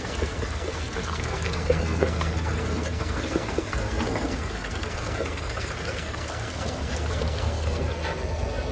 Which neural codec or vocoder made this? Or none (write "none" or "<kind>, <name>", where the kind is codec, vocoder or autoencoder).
codec, SNAC